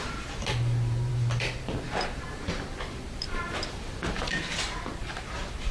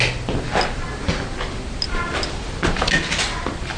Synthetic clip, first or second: first